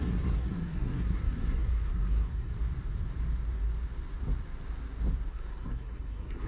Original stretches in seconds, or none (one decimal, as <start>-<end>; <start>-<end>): 2.5-5.3